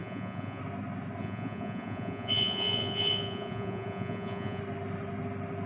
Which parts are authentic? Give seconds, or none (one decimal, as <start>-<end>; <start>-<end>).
0.6-1.2; 4.6-5.7